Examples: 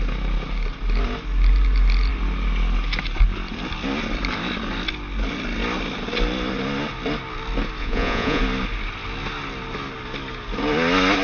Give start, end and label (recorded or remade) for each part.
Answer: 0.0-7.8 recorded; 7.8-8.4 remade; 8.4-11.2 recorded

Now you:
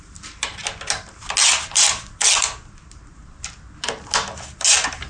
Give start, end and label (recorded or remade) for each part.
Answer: 0.0-5.1 recorded

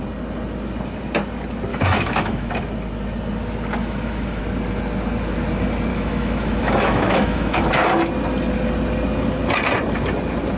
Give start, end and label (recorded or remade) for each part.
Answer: 0.0-1.7 recorded; 1.7-2.5 remade; 2.5-3.8 recorded; 3.8-4.4 remade; 4.4-5.9 recorded; 5.9-7.7 remade; 7.7-10.6 recorded

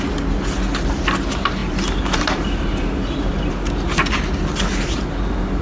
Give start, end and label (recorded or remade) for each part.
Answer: 0.0-1.6 recorded; 1.6-3.5 remade; 3.5-4.7 recorded; 4.7-5.6 remade

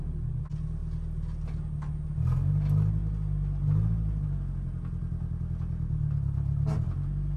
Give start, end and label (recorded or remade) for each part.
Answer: 0.0-7.4 recorded

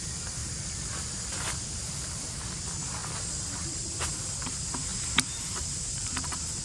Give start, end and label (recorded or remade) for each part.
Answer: 0.0-0.4 recorded; 0.4-1.7 remade; 1.7-3.0 recorded; 3.0-4.5 remade; 4.5-6.6 recorded